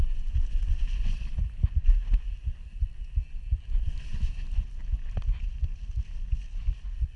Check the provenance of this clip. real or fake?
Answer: real